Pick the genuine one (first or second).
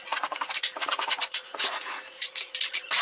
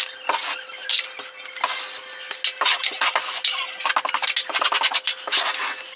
second